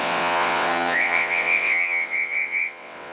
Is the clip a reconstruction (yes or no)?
yes